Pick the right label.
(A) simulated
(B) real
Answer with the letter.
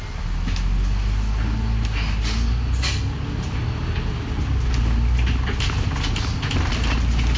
B